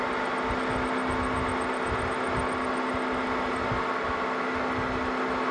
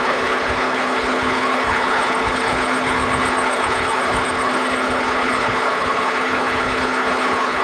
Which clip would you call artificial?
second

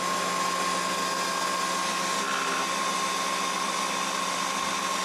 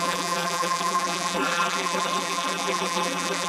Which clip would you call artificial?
second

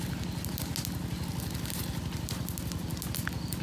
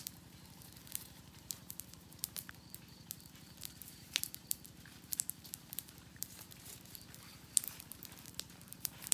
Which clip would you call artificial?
second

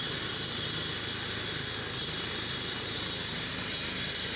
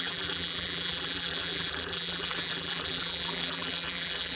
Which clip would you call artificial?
second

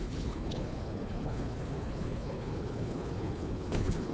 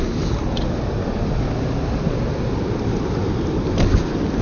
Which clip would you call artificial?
first